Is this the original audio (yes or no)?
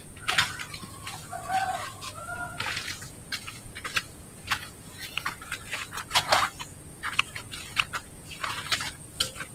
no